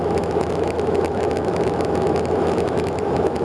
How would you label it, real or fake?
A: fake